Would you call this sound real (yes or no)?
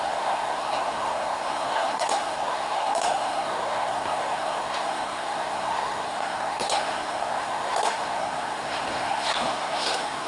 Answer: no